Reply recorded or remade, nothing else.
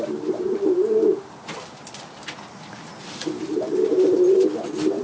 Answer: remade